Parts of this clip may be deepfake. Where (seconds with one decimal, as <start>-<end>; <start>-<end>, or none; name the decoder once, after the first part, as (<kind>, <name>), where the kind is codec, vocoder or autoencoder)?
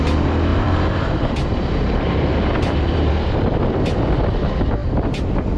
0.5-3.1 (vocoder, BigVGAN v2)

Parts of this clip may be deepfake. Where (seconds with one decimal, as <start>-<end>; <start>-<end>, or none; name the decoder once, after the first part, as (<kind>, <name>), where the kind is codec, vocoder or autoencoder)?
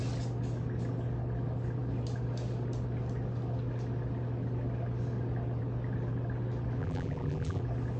6.8-7.6 (vocoder, BigVGAN v2)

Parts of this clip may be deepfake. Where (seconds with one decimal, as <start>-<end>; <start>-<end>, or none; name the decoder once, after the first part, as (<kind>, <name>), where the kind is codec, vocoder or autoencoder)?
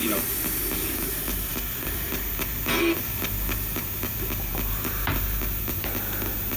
none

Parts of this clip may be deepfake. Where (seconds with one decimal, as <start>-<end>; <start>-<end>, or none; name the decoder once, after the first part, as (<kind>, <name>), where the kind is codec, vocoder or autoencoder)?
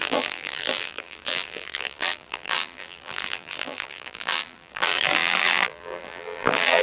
0.0-6.8 (vocoder, BigVGAN v2)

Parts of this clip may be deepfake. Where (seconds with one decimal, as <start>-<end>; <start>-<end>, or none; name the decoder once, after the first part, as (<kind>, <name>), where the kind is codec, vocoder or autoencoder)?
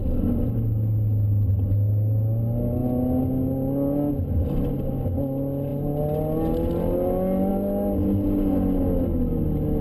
none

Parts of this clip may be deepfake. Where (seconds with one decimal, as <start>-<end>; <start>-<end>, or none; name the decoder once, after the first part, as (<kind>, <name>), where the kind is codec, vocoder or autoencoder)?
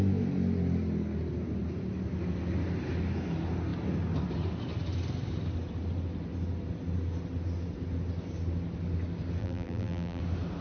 9.4-10.2 (vocoder, BigVGAN v2)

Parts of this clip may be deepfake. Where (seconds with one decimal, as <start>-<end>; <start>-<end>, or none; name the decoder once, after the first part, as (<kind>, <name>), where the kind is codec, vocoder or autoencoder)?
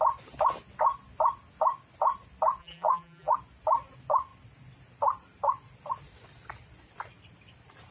2.6-3.3 (vocoder, BigVGAN v2)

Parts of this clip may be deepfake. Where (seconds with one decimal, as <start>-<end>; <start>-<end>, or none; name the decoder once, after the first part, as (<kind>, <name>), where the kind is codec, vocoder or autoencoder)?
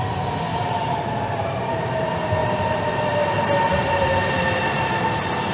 0.5-1.0 (vocoder, BigVGAN v2); 2.4-4.3